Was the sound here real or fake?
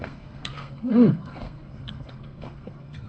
fake